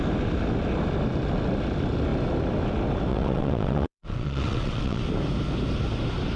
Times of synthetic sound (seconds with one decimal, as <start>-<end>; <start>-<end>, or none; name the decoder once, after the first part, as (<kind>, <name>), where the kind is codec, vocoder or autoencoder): 3.1-5.0 (vocoder, WaveNeXt)